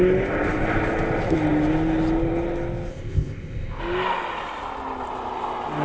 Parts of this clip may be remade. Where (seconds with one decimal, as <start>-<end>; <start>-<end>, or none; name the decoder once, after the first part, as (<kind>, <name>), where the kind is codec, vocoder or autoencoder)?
2.9-3.8 (codec, ZipCodec)